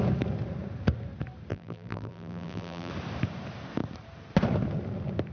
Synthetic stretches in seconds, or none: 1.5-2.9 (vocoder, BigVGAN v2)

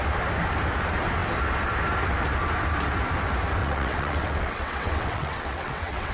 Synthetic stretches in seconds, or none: 3.6-6.1 (vocoder, WaveNeXt)

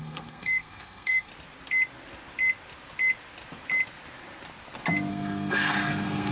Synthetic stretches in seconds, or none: 0.0-1.3 (codec, SNAC); 5.1-6.3

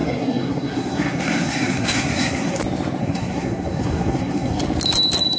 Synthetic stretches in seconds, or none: 0.0-2.6 (codec, SNAC); 3.0-4.6

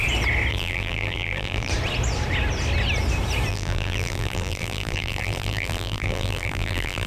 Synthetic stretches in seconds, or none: 0.5-1.7 (vocoder, BigVGAN v2); 3.5-7.1

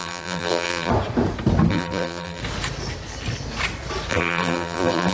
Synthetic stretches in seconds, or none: 0.0-0.9 (vocoder, BigVGAN v2); 1.7-2.4; 4.1-5.1